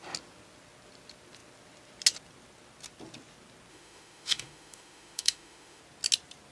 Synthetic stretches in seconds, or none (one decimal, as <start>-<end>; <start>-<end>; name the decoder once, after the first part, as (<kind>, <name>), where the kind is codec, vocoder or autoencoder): 3.7-5.8 (autoencoder, DAC-VAE)